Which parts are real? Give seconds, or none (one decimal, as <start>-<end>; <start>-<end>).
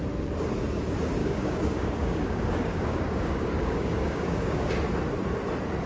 0.0-1.2; 4.7-5.9